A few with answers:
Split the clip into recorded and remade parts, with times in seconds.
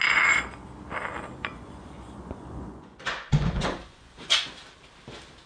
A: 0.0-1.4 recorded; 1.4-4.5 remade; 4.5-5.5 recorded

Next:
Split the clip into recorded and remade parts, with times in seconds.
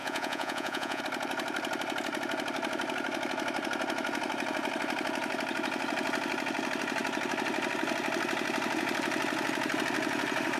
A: 0.0-1.0 remade; 1.0-10.6 recorded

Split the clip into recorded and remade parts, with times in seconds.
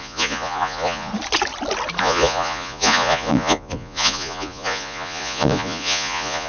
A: 0.0-1.1 remade; 1.1-2.0 recorded; 2.0-6.5 remade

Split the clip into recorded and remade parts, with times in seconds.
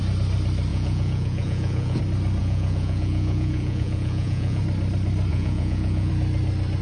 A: 0.0-0.7 recorded; 0.7-2.0 remade; 2.0-2.4 recorded; 2.4-4.6 remade; 4.6-5.3 recorded; 5.3-6.1 remade; 6.1-6.8 recorded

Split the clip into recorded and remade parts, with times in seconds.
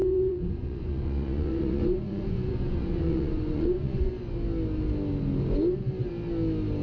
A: 0.0-4.1 remade; 4.1-6.8 recorded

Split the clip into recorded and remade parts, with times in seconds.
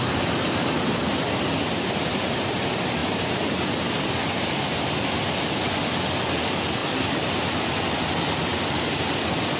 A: 0.0-9.6 recorded